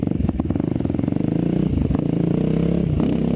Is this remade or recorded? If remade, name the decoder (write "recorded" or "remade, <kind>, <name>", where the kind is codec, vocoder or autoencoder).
remade, vocoder, BigVGAN v2